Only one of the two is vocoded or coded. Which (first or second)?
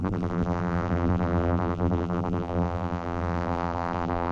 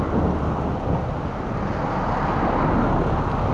first